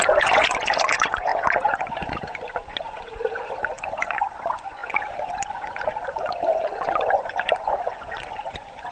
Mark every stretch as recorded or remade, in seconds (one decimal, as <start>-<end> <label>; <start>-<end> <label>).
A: 0.0-8.9 remade